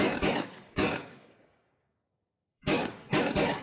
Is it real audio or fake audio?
fake